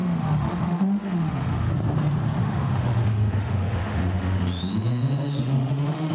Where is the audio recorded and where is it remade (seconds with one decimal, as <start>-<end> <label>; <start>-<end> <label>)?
0.0-1.7 remade; 1.7-2.4 recorded; 2.4-6.1 remade